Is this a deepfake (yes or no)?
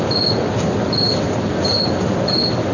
no